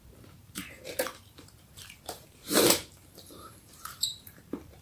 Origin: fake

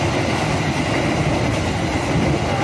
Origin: real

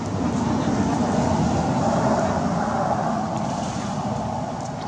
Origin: real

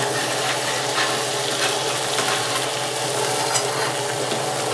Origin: real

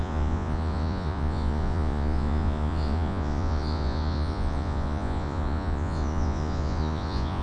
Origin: fake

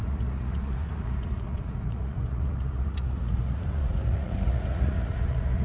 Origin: fake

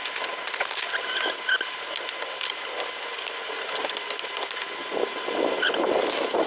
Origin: real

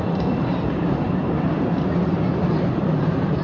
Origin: real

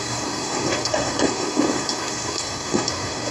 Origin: fake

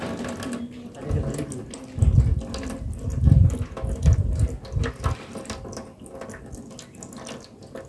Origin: real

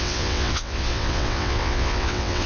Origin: fake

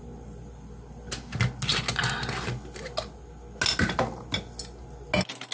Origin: real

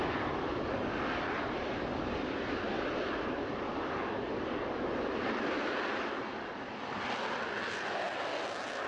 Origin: real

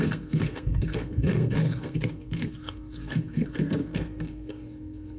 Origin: fake